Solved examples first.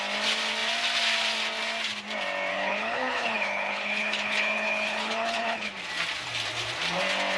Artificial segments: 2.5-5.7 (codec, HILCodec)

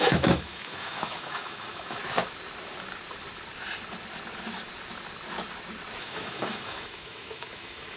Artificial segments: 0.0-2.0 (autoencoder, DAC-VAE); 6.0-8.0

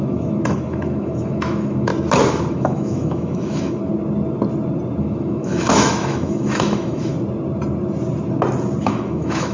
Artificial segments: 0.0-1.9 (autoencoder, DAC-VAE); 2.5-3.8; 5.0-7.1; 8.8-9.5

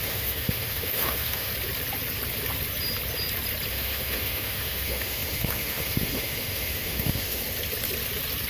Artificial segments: 0.0-1.5 (autoencoder, DAC-VAE); 3.7-7.4

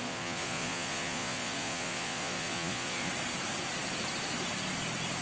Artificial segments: 0.0-3.1 (vocoder, Vocos)

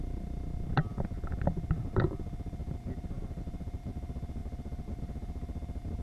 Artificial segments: 2.6-3.9 (vocoder, BigVGAN v2); 4.4-5.0

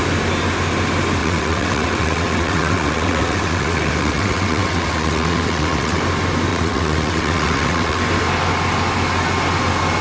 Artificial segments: 1.2-6.0 (vocoder, WaveNeXt); 6.5-8.0

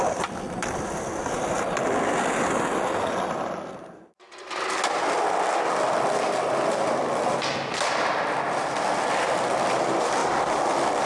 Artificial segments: none